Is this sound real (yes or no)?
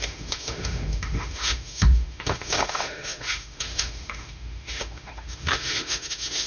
no